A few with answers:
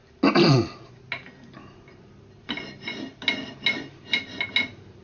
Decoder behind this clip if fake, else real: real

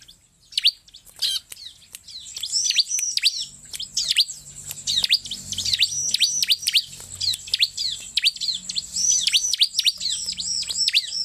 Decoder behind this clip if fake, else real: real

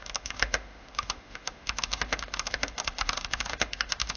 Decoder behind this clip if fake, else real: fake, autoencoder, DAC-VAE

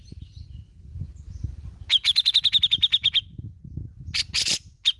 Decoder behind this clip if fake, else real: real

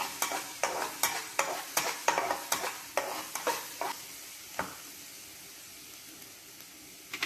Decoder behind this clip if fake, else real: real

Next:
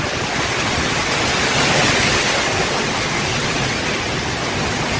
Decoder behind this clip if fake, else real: real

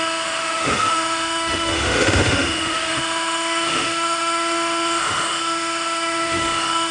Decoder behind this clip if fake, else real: fake, autoencoder, DAC-VAE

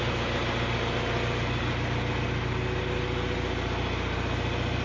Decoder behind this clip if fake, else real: real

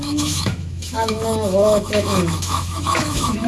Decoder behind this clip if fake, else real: fake, autoencoder, DAC-VAE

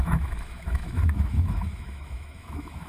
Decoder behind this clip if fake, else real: fake, autoencoder, DAC-VAE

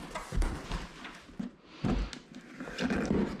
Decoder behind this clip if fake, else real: real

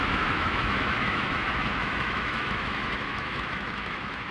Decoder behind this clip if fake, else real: fake, autoencoder, DAC-VAE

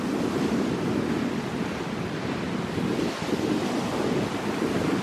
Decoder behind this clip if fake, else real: real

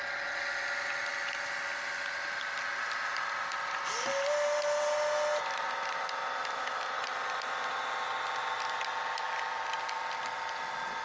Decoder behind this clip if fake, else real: real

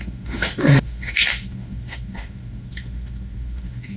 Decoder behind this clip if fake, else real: fake, autoencoder, DAC-VAE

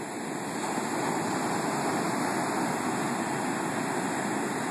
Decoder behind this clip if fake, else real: real